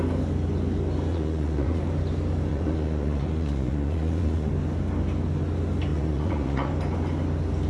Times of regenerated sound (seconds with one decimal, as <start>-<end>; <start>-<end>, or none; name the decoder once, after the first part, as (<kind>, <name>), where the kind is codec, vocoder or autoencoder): 1.1-1.8 (vocoder, Vocos); 2.5-4.5; 5.9-6.7